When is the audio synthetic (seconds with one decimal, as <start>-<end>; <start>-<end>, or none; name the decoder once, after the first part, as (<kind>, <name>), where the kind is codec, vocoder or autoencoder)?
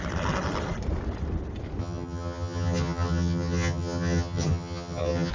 1.8-5.3 (vocoder, HiFi-GAN)